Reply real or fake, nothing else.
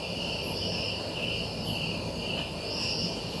real